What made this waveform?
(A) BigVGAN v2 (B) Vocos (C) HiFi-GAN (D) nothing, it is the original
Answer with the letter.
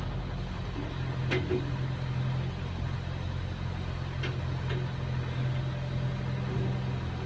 D